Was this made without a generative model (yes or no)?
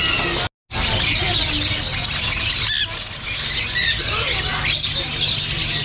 yes